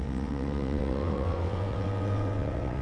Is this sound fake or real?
fake